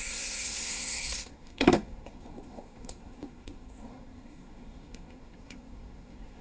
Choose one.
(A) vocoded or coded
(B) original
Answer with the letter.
A